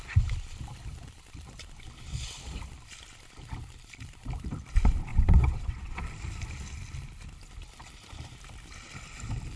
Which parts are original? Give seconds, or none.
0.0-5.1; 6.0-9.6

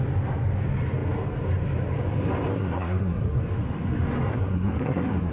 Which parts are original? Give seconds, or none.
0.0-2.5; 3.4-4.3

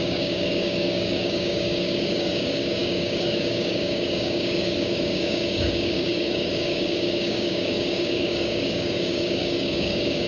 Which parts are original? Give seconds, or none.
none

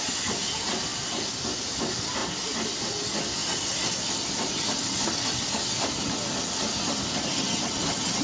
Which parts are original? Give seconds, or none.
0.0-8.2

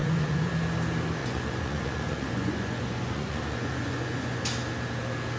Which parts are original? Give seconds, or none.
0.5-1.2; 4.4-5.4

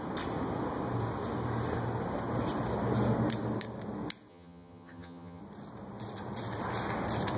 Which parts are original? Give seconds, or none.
0.0-4.3; 5.4-7.4

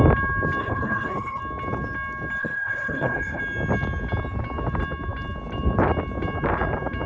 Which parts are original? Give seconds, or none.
0.0-0.6; 1.4-2.4; 3.4-7.1

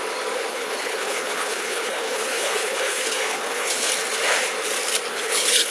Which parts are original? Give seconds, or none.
0.0-0.5; 3.9-5.1